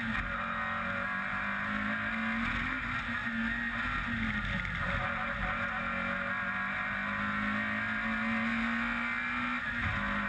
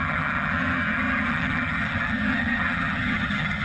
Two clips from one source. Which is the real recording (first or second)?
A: first